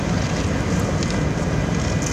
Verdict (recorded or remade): recorded